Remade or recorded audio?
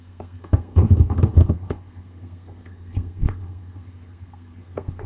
remade